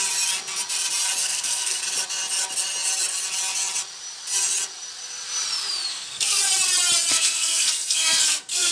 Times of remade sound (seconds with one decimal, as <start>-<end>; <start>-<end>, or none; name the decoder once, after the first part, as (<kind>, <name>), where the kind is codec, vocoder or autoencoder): 1.2-1.8 (codec, SNAC); 5.9-6.4; 7.1-8.7